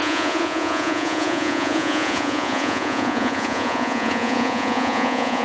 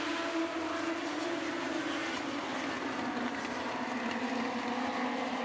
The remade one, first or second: first